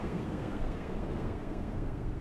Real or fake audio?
fake